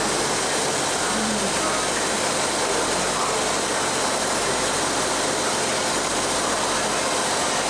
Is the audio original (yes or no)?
yes